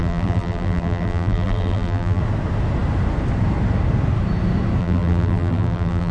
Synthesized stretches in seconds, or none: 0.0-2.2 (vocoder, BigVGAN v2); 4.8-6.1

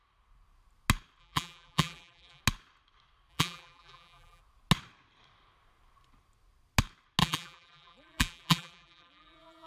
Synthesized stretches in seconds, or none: 1.2-2.4 (vocoder, BigVGAN v2); 3.3-4.4; 7.2-9.7

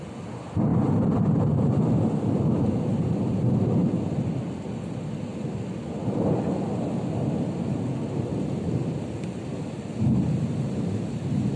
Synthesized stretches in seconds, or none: 0.7-2.6 (vocoder, BigVGAN v2)

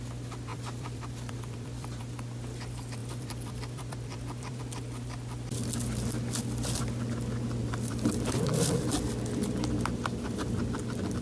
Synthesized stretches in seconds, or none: 0.5-2.0 (vocoder, BigVGAN v2); 3.0-4.6; 7.6-8.9

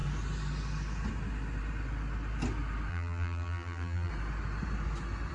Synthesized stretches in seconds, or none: 2.9-4.1 (vocoder, BigVGAN v2)

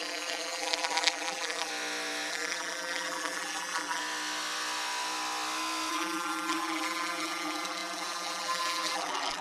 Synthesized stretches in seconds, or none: 0.0-1.7 (vocoder, BigVGAN v2); 2.3-4.0; 5.9-9.4

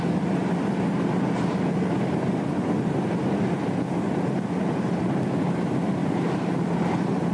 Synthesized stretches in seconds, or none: 6.0-6.7 (vocoder, BigVGAN v2)